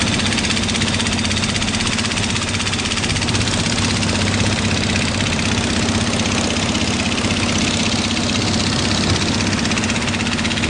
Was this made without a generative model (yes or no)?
yes